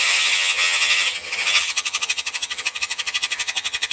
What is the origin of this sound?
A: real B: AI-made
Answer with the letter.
B